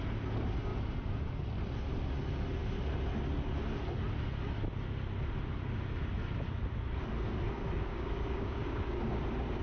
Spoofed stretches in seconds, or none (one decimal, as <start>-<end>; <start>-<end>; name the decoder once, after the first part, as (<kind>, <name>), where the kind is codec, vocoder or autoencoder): 7.9-9.2 (codec, DAC)